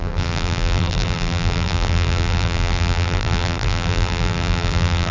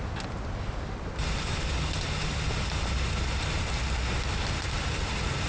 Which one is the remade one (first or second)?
first